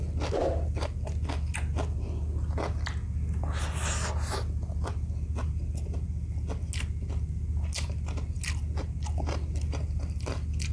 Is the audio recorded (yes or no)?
yes